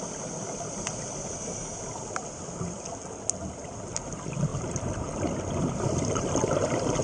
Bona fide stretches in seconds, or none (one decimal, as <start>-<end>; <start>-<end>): 0.0-4.5; 5.2-7.0